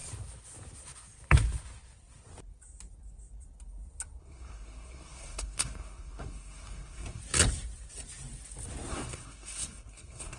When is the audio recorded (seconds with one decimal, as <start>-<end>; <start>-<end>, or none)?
0.0-4.2; 7.2-8.9